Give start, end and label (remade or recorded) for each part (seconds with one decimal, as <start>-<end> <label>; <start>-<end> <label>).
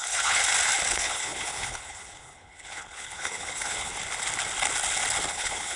0.0-0.4 remade; 0.4-0.9 recorded; 0.9-3.9 remade; 3.9-5.3 recorded; 5.3-5.8 remade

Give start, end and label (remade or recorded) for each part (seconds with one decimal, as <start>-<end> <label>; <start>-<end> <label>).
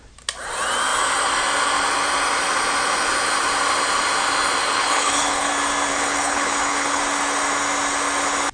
0.0-4.6 recorded; 4.6-5.5 remade; 5.5-5.9 recorded; 5.9-7.0 remade; 7.0-8.5 recorded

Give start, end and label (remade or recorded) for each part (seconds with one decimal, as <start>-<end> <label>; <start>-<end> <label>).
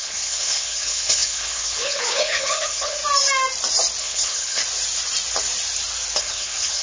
0.0-3.0 remade; 3.0-4.0 recorded; 4.0-4.6 remade; 4.6-6.2 recorded; 6.2-6.8 remade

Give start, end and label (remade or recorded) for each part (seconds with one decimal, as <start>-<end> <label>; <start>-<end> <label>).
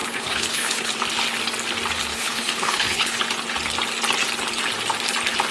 0.0-0.9 remade; 0.9-2.1 recorded; 2.1-3.2 remade; 3.2-5.5 recorded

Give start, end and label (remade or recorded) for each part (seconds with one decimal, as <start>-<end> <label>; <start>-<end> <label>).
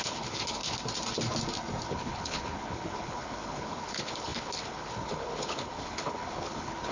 0.0-0.6 remade; 0.6-1.9 recorded; 1.9-6.9 remade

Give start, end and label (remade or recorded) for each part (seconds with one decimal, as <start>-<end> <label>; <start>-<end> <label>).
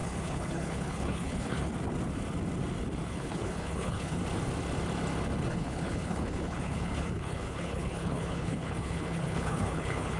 0.0-1.7 remade; 1.7-3.1 recorded; 3.1-4.2 remade; 4.2-5.5 recorded; 5.5-10.2 remade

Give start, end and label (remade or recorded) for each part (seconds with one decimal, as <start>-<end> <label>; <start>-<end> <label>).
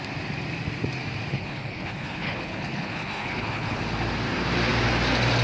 0.0-1.3 recorded; 1.3-3.8 remade; 3.8-5.4 recorded